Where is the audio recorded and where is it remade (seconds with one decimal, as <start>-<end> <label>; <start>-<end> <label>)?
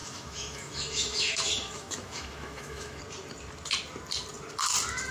0.0-3.0 remade; 3.0-5.1 recorded